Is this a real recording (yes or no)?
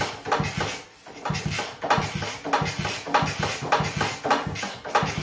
yes